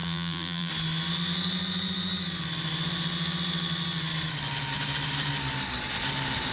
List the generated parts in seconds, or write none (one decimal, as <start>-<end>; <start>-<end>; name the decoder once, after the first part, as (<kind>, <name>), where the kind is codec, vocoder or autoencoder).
0.0-0.7 (vocoder, BigVGAN v2)